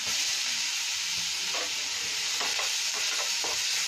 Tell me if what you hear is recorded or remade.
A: remade